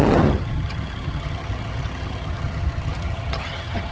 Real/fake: fake